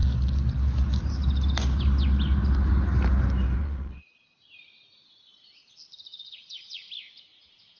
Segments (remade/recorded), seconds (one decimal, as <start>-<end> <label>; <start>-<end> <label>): 0.0-3.6 recorded; 3.6-4.5 remade; 4.5-6.1 recorded; 6.1-6.9 remade; 6.9-7.8 recorded